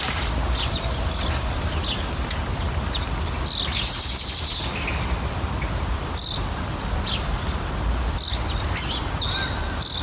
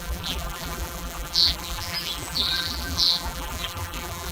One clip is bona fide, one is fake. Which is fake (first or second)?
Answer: second